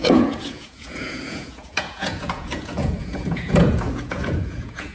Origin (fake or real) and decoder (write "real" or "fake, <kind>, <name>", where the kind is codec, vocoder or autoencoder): fake, vocoder, Vocos